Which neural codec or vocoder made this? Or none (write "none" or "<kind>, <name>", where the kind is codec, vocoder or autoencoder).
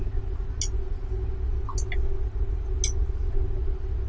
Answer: none